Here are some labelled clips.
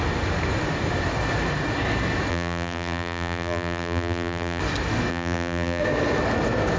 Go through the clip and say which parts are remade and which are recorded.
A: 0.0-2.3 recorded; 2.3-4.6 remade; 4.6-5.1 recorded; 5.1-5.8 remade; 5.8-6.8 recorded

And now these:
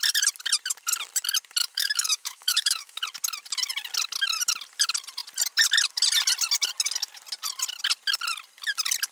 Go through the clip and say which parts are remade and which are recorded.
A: 0.0-1.6 recorded; 1.6-3.0 remade; 3.0-9.1 recorded

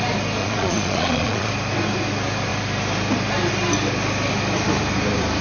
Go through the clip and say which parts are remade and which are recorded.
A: 0.0-0.4 recorded; 0.4-1.5 remade; 1.5-5.4 recorded

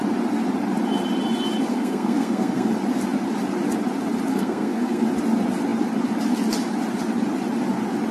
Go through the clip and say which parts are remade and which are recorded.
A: 0.0-1.7 recorded; 1.7-2.7 remade; 2.7-4.3 recorded; 4.3-5.0 remade; 5.0-8.1 recorded

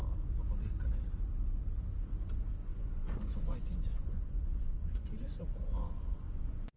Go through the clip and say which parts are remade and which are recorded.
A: 0.0-2.7 recorded; 2.7-6.8 remade

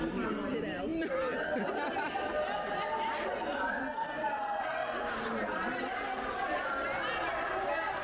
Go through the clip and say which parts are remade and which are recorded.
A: 0.0-8.0 recorded

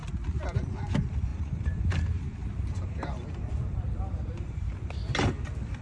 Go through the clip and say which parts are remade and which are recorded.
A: 0.0-1.3 recorded; 1.3-4.8 remade; 4.8-5.8 recorded